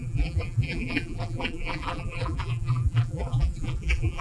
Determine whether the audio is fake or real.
fake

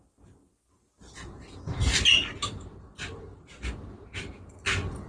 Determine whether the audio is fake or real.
real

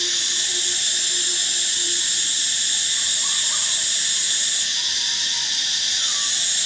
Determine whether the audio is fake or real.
real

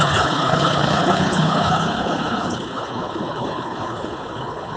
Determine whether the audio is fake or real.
fake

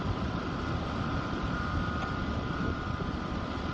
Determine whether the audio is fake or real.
real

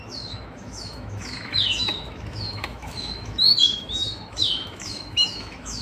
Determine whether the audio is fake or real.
fake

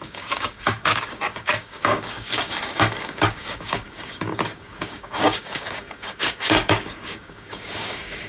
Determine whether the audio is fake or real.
fake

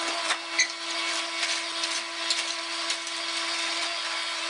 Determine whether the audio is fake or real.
real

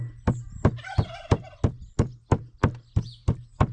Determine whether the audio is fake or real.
real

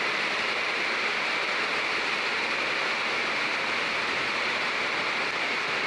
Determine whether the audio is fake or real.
fake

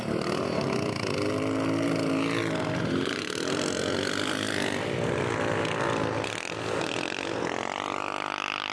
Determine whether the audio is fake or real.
real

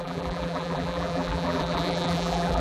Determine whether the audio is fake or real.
fake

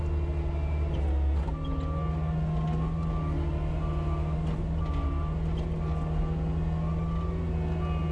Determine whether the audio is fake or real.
real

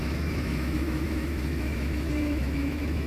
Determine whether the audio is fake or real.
fake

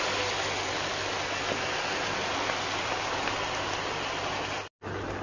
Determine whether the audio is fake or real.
real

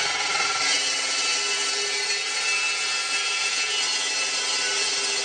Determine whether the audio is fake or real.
real